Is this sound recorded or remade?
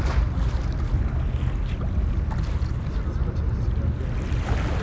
recorded